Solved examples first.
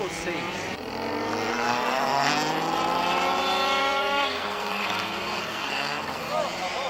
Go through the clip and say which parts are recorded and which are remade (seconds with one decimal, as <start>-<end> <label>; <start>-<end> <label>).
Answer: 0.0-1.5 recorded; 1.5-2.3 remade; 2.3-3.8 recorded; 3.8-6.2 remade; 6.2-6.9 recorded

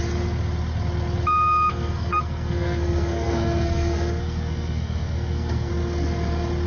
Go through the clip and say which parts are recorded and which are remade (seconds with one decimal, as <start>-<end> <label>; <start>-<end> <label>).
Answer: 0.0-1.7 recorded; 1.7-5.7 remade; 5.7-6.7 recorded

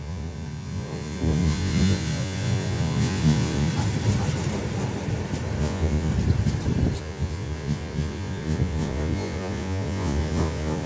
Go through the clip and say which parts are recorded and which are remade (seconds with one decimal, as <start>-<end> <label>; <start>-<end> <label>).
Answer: 0.0-3.7 remade; 3.7-5.6 recorded; 5.6-6.1 remade; 6.1-7.0 recorded; 7.0-10.9 remade

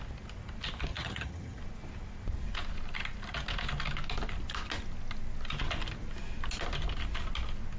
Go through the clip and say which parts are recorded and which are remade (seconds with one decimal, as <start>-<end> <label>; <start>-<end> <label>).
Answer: 0.0-0.9 recorded; 0.9-1.6 remade; 1.6-7.8 recorded